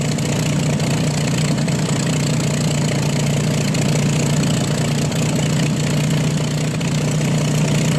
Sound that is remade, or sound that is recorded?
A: recorded